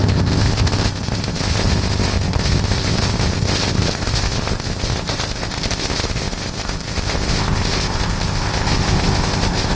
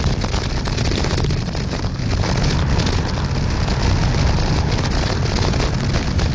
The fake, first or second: first